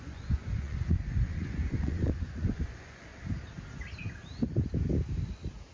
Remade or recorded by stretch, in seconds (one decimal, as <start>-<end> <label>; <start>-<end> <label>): 0.0-3.1 remade; 3.1-5.7 recorded